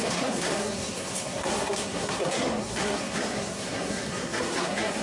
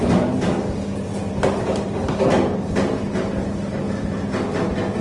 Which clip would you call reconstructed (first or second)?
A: first